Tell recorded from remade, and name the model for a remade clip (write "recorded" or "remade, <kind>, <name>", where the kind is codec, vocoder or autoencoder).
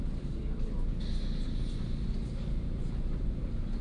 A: recorded